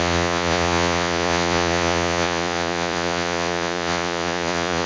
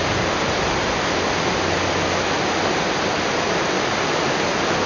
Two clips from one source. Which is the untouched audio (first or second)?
second